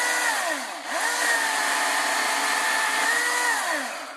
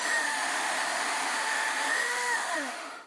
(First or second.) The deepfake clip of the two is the second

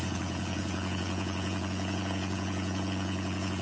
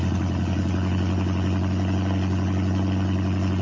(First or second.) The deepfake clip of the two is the first